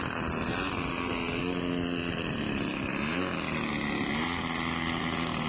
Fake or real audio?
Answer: real